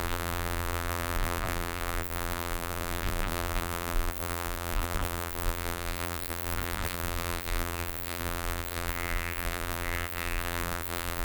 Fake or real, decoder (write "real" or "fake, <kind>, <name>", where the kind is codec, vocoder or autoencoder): fake, vocoder, BigVGAN v2